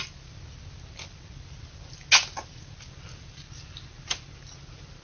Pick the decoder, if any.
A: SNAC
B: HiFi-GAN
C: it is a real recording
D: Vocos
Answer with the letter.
C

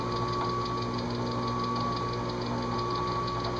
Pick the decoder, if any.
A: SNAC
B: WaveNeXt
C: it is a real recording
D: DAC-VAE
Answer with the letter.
C